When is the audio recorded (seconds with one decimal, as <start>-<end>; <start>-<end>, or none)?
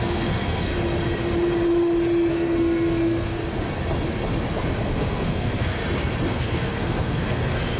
0.7-2.3; 3.4-4.8; 5.8-6.3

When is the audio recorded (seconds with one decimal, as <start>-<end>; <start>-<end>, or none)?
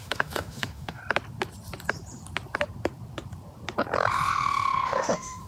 1.0-4.1